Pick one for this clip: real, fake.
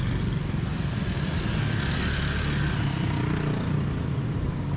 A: real